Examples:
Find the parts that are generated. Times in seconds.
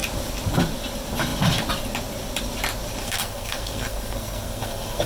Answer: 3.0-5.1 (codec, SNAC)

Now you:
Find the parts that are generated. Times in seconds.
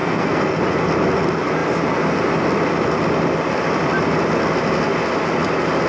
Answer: 0.0-0.6 (codec, SNAC)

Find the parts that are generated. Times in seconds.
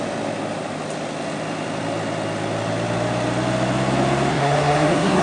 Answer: 4.3-5.2 (codec, SNAC)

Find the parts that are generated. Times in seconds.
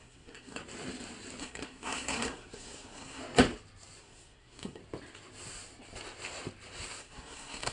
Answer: 0.0-0.6 (codec, SNAC); 1.4-3.2; 4.0-4.8; 7.0-7.7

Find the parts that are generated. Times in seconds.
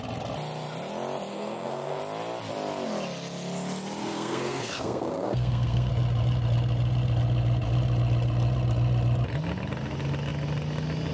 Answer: 1.3-2.0 (codec, SNAC); 4.0-5.9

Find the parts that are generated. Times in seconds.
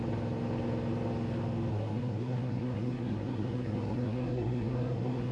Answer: 1.7-5.3 (codec, SNAC)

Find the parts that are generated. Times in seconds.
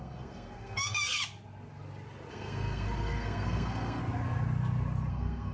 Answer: 0.0-1.2 (codec, SNAC); 2.3-4.0; 5.1-5.5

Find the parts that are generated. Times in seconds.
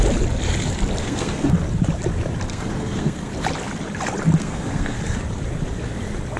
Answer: 1.0-1.5 (codec, SNAC); 2.5-3.3; 4.4-5.0